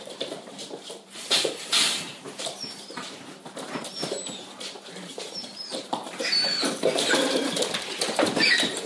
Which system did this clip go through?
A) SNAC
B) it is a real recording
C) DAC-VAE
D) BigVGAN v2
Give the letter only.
D